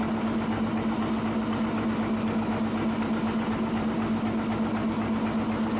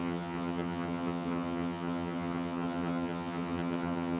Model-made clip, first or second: second